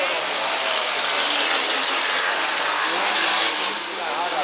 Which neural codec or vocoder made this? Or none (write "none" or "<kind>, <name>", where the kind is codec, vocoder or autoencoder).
none